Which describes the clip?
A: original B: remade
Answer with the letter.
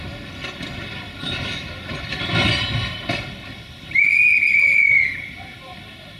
A